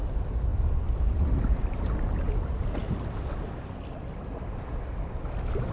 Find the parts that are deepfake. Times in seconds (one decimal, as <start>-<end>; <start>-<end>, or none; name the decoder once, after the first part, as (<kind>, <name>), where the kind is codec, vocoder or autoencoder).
none